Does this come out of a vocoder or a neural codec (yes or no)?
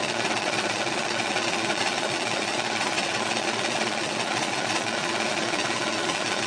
yes